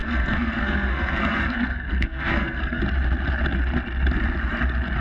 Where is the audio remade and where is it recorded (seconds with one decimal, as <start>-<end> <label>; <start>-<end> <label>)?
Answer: 0.0-2.8 remade; 2.8-5.0 recorded